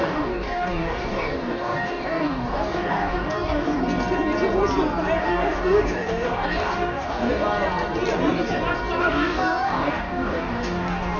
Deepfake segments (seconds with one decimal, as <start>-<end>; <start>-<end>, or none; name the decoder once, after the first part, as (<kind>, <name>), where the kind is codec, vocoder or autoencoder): 0.0-3.8 (codec, DAC); 5.2-7.3; 9.0-11.2